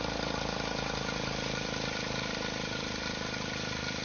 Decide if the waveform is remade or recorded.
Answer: recorded